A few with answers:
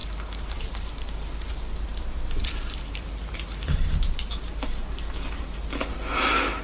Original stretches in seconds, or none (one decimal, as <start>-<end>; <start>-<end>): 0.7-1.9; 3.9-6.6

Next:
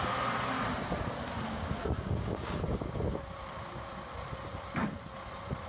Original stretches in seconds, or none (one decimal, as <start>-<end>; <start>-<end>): 0.0-1.8; 3.2-5.7

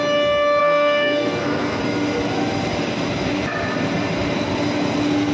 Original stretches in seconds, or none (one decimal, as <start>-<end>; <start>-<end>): 0.0-0.6; 1.8-5.3

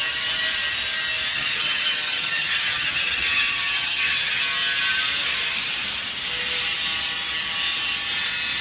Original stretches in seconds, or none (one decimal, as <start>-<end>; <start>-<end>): 0.0-1.3; 4.4-8.6